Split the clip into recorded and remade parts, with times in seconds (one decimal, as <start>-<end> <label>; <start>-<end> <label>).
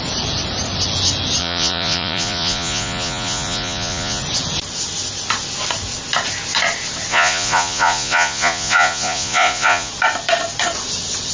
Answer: 0.0-1.4 recorded; 1.4-4.2 remade; 4.2-7.1 recorded; 7.1-9.9 remade; 9.9-11.3 recorded